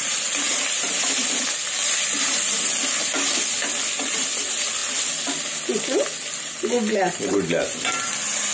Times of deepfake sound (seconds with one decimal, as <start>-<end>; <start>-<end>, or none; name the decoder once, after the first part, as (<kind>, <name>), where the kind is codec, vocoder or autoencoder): none